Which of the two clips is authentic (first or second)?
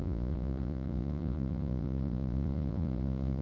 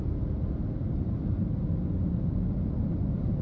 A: second